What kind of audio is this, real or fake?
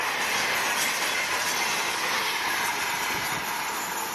fake